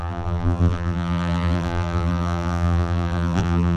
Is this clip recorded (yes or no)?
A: no